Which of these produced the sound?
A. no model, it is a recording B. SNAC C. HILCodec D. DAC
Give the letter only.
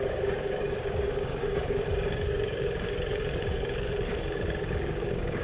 D